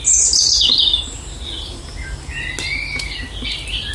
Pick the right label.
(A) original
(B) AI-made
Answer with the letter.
A